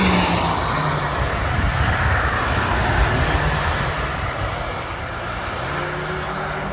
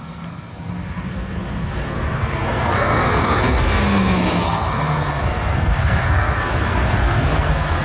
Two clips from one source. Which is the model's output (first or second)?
second